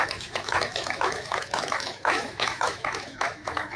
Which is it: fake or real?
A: fake